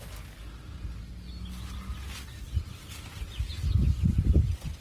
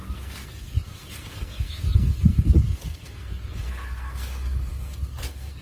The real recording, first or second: first